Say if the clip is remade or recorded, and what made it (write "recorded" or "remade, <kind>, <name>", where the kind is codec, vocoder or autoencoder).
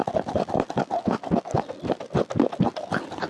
recorded